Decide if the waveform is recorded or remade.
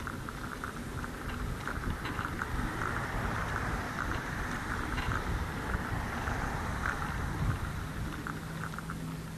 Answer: remade